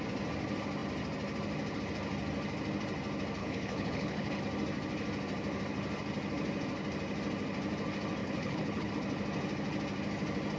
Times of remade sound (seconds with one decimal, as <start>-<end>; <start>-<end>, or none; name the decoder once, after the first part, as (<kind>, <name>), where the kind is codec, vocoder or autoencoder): 3.4-4.4 (codec, HILCodec); 8.2-8.9